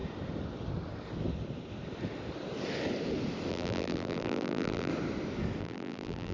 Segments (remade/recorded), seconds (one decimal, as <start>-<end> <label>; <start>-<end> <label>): 0.0-3.5 recorded; 3.5-4.9 remade; 4.9-5.6 recorded; 5.6-6.3 remade